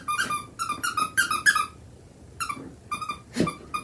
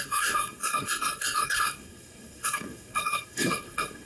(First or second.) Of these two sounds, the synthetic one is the second